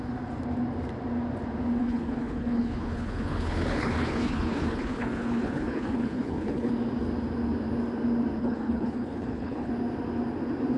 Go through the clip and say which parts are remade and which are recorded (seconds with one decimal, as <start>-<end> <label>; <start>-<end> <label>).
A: 0.0-1.8 recorded; 1.8-6.7 remade; 6.7-8.4 recorded; 8.4-9.7 remade; 9.7-10.8 recorded

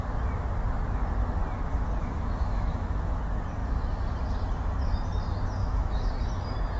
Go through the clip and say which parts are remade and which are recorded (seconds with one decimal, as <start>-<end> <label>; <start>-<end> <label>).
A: 0.0-2.0 recorded; 2.0-3.2 remade; 3.2-5.6 recorded; 5.6-6.1 remade; 6.1-6.8 recorded

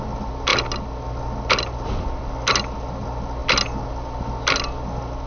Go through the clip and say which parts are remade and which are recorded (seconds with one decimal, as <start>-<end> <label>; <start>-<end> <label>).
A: 0.0-5.3 recorded

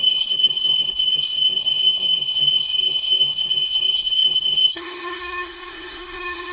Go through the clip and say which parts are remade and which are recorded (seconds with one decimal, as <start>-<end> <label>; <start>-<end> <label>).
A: 0.0-6.5 remade

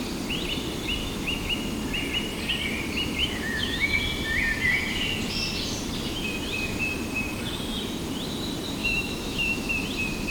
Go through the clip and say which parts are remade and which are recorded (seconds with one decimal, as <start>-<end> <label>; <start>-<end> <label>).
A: 0.0-1.0 recorded; 1.0-1.6 remade; 1.6-3.2 recorded; 3.2-4.0 remade; 4.0-8.8 recorded; 8.8-9.7 remade; 9.7-10.3 recorded

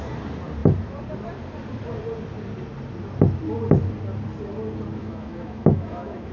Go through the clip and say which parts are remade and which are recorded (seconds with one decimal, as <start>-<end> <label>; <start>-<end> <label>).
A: 0.0-5.0 recorded; 5.0-6.3 remade

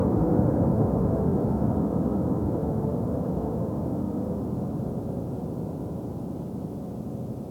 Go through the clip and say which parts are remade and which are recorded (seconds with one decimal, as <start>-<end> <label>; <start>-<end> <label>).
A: 0.0-4.4 remade; 4.4-7.5 recorded

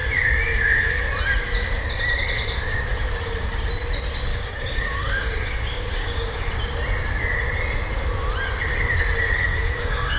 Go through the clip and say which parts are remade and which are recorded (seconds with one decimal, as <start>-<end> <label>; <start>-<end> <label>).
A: 0.0-1.0 remade; 1.0-4.3 recorded; 4.3-6.5 remade; 6.5-9.5 recorded; 9.5-10.2 remade